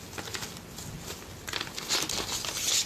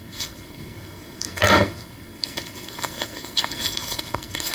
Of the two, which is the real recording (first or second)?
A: first